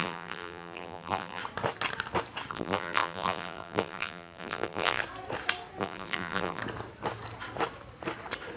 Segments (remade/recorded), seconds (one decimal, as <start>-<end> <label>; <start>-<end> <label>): 0.0-1.4 remade; 1.4-2.5 recorded; 2.5-5.0 remade; 5.0-5.8 recorded; 5.8-6.6 remade; 6.6-8.6 recorded